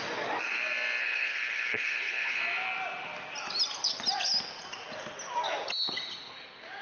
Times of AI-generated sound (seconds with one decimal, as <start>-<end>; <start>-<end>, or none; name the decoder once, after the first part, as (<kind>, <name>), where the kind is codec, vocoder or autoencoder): 1.0-2.4 (codec, HILCodec)